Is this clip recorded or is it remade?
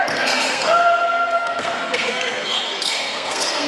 remade